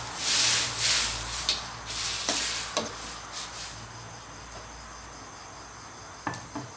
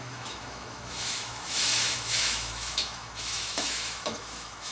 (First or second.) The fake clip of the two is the second